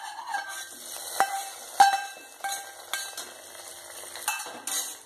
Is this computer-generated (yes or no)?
no